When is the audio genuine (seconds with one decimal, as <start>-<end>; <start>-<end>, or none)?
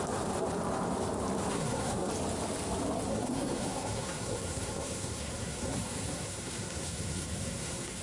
0.0-1.5; 2.1-3.1